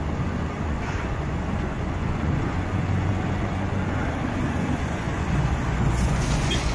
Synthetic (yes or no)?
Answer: yes